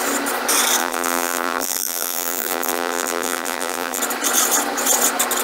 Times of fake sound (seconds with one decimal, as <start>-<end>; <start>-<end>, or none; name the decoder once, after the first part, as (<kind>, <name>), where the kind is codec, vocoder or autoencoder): 0.8-4.0 (vocoder, BigVGAN v2)